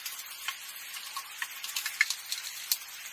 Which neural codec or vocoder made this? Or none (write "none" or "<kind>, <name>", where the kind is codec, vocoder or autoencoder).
none